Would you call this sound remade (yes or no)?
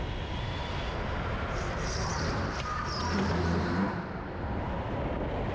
no